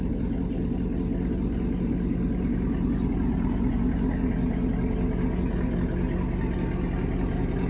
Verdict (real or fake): real